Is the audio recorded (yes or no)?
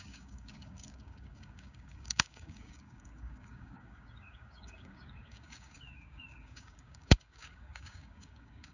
no